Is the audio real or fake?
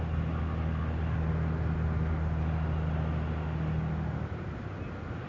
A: real